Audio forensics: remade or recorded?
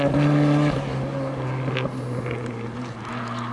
recorded